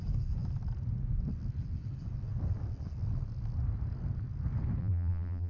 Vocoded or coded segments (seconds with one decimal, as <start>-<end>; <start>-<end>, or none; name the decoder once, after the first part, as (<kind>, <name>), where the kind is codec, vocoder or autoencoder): 4.8-5.5 (vocoder, BigVGAN v2)